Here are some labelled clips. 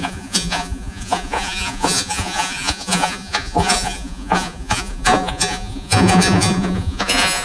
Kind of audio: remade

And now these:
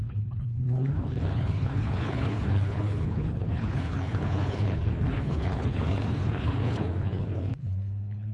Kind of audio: remade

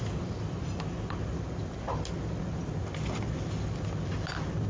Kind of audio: recorded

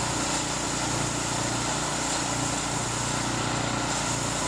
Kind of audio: recorded